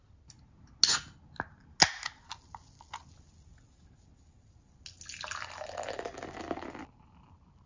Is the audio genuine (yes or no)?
yes